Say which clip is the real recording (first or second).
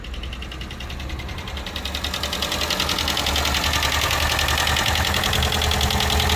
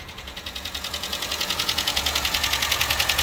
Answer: first